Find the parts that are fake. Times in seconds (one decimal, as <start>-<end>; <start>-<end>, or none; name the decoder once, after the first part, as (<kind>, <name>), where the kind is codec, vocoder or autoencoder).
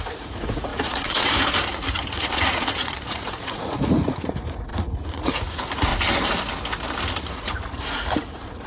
0.0-5.9 (vocoder, Vocos); 7.3-8.7